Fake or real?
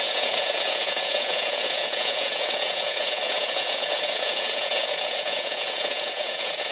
fake